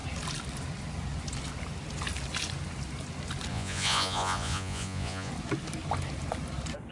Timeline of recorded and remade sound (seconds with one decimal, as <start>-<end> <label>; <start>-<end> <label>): 0.0-3.5 recorded; 3.5-5.3 remade; 5.3-6.9 recorded